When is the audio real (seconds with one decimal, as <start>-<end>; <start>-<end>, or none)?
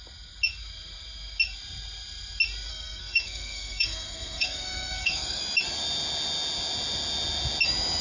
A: 0.0-2.7; 5.4-8.0